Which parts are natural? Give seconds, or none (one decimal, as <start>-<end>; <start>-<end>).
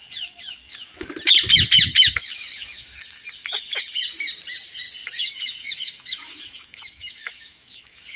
1.1-1.9; 3.9-5.0